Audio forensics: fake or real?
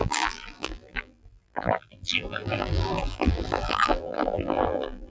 fake